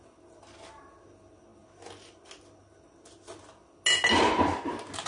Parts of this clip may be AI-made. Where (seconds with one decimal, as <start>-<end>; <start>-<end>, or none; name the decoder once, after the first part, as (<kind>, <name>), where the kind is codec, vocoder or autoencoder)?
none